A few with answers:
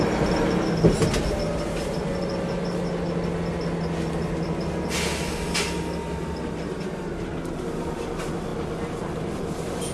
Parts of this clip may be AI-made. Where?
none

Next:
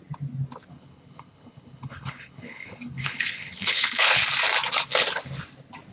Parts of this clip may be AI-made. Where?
0.7-4.2 (codec, HILCodec)